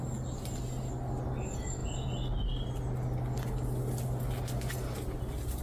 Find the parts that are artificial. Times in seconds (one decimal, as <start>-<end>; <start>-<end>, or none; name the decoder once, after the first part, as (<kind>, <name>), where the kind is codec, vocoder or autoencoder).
none

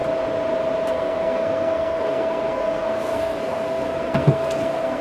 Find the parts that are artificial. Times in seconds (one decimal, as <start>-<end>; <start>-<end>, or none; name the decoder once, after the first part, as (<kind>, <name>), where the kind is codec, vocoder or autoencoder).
0.9-5.0 (codec, SNAC)

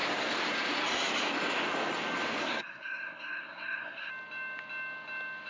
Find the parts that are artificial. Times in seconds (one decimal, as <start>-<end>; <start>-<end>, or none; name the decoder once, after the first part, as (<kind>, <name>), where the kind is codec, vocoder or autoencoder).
2.4-4.1 (codec, SNAC)

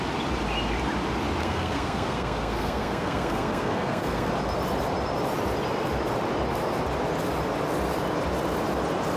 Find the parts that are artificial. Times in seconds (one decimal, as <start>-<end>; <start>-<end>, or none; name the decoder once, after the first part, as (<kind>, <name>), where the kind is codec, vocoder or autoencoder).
1.4-4.3 (codec, SNAC)

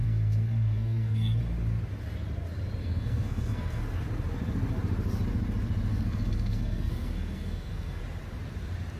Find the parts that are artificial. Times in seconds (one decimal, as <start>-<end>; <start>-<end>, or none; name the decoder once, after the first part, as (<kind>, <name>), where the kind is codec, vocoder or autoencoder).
0.0-1.4 (codec, SNAC); 2.8-3.8; 5.9-8.0

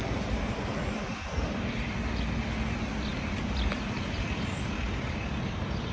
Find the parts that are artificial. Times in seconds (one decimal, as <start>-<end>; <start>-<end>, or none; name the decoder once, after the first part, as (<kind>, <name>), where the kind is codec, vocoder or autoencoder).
none

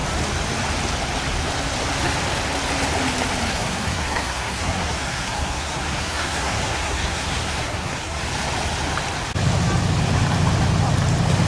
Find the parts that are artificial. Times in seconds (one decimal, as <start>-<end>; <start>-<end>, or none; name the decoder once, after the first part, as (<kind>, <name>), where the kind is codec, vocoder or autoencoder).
3.5-8.2 (codec, SNAC)

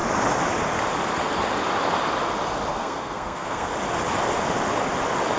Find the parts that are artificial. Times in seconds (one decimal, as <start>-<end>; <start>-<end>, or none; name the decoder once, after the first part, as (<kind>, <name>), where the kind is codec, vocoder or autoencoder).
2.7-3.7 (codec, SNAC)